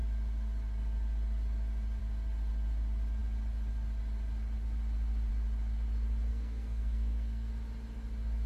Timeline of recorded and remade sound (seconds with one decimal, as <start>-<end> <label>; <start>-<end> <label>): 0.0-6.3 recorded; 6.3-7.5 remade; 7.5-8.5 recorded